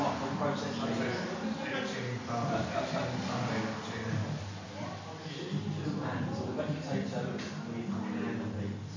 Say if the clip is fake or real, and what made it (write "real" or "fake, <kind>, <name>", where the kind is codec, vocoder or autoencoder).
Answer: real